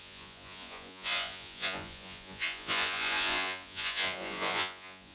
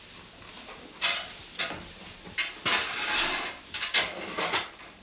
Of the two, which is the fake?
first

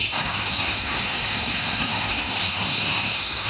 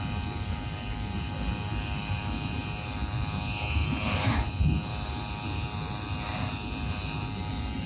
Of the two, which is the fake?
first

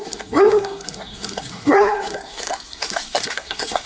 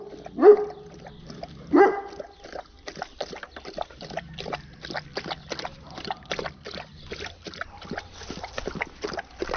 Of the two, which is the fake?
first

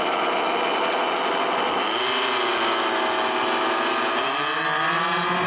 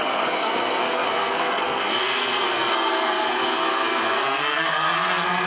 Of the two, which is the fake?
second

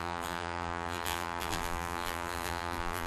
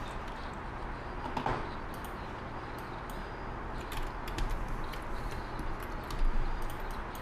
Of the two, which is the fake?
first